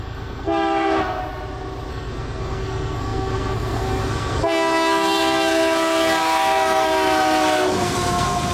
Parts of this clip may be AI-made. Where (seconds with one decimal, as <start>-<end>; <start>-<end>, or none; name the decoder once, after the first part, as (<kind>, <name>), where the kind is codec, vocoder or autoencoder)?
0.0-1.2 (codec, SNAC); 1.9-8.5